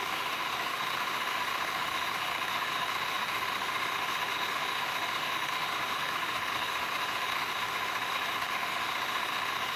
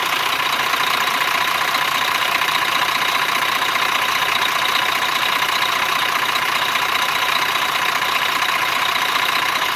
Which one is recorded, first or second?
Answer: second